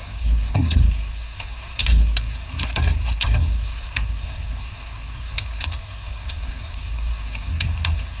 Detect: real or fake fake